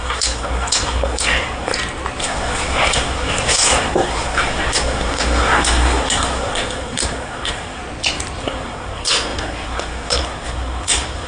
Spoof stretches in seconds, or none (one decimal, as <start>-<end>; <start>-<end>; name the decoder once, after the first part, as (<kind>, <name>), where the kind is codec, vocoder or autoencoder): 0.0-1.7 (codec, SNAC); 2.2-7.8; 8.4-11.3